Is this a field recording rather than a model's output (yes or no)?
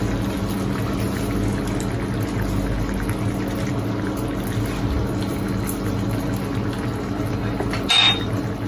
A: yes